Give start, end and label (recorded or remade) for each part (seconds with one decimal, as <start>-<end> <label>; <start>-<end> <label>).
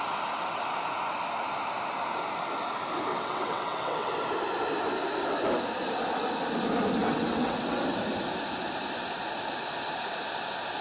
0.0-3.1 recorded; 3.1-4.1 remade; 4.1-7.0 recorded; 7.0-7.8 remade; 7.8-10.8 recorded